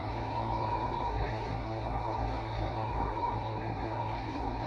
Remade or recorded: remade